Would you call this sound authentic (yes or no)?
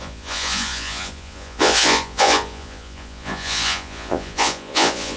no